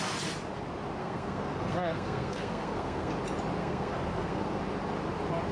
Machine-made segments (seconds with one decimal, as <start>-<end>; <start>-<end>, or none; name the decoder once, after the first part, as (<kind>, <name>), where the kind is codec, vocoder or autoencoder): 1.0-3.1 (codec, SNAC); 3.6-4.6